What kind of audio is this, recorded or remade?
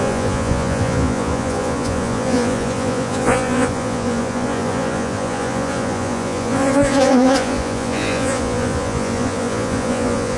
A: remade